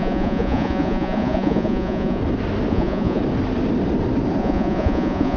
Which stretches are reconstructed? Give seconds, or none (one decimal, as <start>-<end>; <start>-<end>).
0.0-2.2; 2.7-3.2; 4.4-5.4